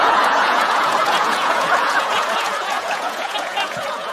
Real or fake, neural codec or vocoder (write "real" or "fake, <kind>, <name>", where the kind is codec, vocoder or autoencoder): fake, vocoder, Vocos